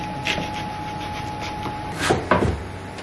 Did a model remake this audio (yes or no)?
yes